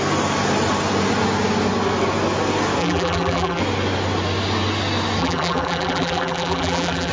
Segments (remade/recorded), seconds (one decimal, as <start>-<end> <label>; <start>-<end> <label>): 0.0-2.8 recorded; 2.8-3.6 remade; 3.6-5.2 recorded; 5.2-7.1 remade